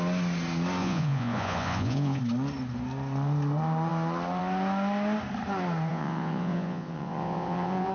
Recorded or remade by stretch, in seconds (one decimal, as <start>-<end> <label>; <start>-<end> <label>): 0.0-0.8 recorded; 0.8-2.2 remade; 2.2-5.9 recorded; 5.9-7.9 remade